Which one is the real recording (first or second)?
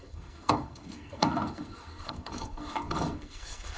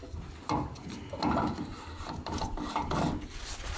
second